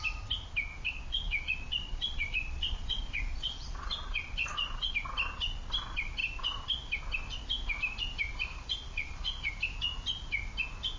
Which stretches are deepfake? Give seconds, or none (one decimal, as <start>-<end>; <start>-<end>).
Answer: 0.7-4.9; 8.5-9.5